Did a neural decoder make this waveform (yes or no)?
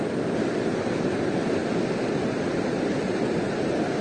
no